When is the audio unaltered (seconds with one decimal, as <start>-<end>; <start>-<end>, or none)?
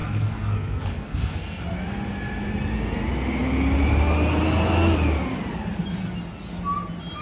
1.6-7.2